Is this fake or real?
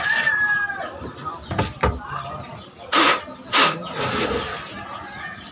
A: real